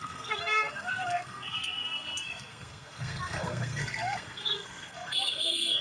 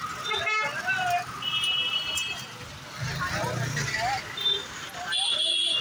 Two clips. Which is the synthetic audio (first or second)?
first